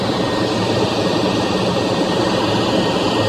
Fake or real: real